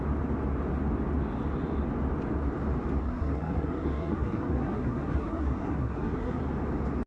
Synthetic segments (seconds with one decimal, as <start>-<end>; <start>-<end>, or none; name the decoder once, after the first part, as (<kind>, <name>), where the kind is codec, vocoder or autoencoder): 3.0-6.4 (codec, SNAC)